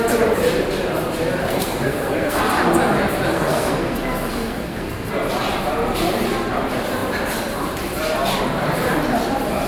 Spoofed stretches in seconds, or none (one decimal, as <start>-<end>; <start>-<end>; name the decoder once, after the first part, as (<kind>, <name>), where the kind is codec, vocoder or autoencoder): 1.4-2.4 (codec, SNAC); 3.3-5.1